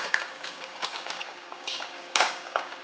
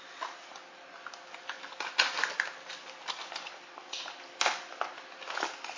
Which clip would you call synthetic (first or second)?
first